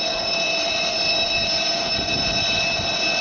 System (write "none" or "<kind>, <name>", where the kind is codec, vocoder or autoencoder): none